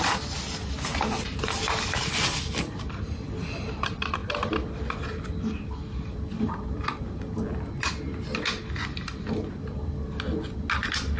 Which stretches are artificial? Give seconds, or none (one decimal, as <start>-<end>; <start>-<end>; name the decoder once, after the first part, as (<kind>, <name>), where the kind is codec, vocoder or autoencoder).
0.9-3.0 (vocoder, BigVGAN v2); 4.2-7.9